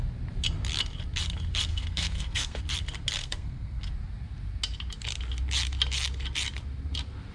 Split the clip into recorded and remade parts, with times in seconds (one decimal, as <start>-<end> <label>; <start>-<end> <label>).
0.0-1.7 recorded; 1.7-2.6 remade; 2.6-3.2 recorded; 3.2-3.8 remade; 3.8-7.3 recorded